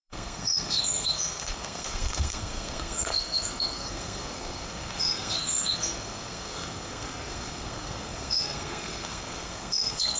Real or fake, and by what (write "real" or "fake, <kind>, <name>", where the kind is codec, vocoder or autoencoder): fake, codec, SNAC